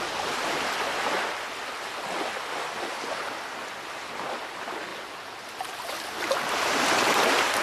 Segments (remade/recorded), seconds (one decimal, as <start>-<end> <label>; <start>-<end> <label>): 0.0-7.6 recorded